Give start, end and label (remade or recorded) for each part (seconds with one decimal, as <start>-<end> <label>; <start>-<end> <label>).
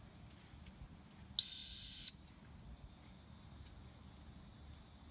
0.0-5.1 recorded